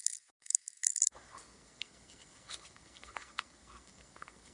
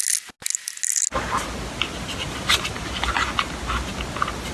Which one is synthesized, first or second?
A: first